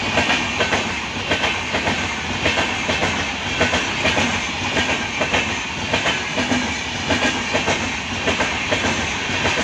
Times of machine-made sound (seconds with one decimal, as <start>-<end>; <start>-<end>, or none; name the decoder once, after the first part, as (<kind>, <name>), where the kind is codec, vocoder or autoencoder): none